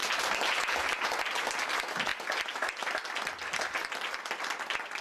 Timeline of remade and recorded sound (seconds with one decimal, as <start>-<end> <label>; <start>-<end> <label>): 0.0-5.0 recorded